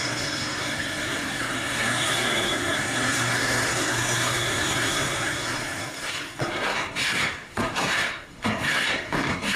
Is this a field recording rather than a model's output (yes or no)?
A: no